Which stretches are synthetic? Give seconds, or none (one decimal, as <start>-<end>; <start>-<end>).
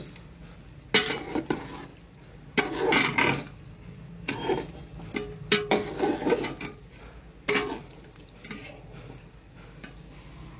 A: none